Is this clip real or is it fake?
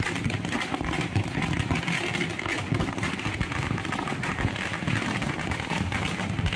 real